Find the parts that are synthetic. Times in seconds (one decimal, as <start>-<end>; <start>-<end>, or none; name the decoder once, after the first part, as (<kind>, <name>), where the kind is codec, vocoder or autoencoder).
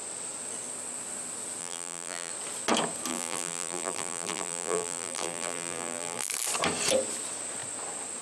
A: 1.6-2.3 (vocoder, BigVGAN v2); 3.1-6.3